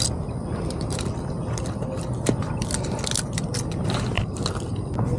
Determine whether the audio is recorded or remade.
remade